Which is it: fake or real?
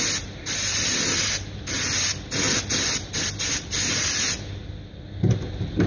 real